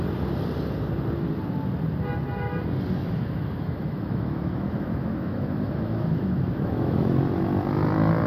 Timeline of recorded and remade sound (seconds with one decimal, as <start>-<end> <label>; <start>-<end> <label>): 0.0-3.0 recorded; 3.0-7.1 remade; 7.1-8.3 recorded